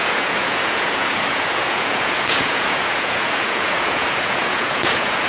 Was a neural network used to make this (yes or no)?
yes